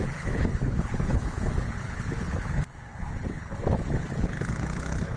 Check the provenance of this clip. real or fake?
fake